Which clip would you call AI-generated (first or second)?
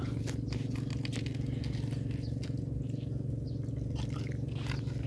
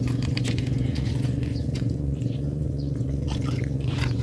second